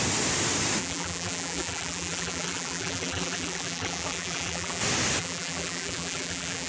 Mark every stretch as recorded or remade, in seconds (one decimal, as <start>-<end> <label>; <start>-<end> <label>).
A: 0.0-0.8 recorded; 0.8-4.8 remade; 4.8-5.2 recorded; 5.2-6.7 remade